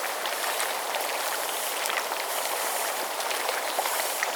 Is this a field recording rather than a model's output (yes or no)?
no